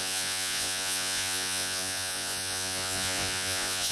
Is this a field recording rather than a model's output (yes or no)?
no